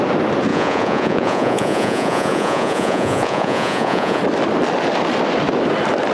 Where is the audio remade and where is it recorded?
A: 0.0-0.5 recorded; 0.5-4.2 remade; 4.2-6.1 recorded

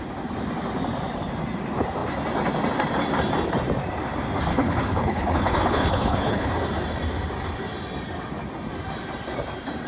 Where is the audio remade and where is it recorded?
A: 0.0-4.5 recorded; 4.5-6.5 remade; 6.5-9.9 recorded